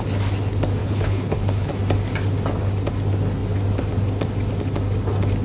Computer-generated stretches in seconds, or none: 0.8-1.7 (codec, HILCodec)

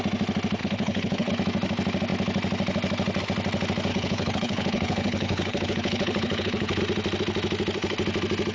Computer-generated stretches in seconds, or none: 0.6-1.3 (codec, HILCodec); 3.9-6.8